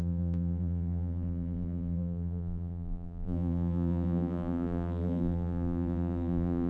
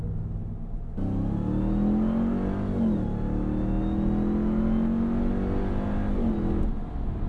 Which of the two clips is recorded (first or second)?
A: second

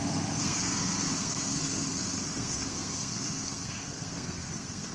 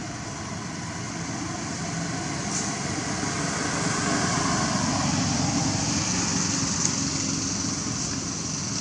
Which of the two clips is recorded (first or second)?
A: second